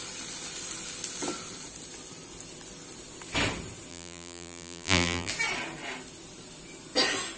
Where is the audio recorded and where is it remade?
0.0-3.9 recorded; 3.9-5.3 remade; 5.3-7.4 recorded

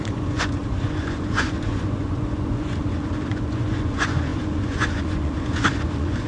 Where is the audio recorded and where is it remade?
0.0-6.3 remade

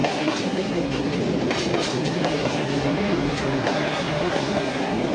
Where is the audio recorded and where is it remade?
0.0-1.2 remade; 1.2-1.9 recorded; 1.9-5.1 remade

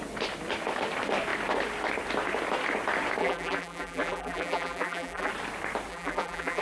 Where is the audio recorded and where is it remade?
0.0-3.2 recorded; 3.2-5.3 remade; 5.3-5.9 recorded; 5.9-6.6 remade

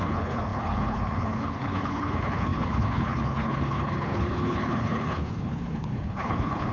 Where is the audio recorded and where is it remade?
0.0-6.7 remade

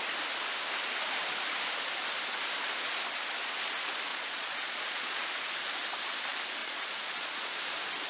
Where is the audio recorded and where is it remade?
0.0-4.1 recorded; 4.1-5.2 remade; 5.2-6.6 recorded; 6.6-7.6 remade; 7.6-8.1 recorded

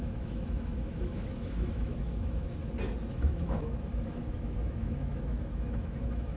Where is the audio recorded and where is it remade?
0.0-2.6 remade; 2.6-3.1 recorded; 3.1-6.4 remade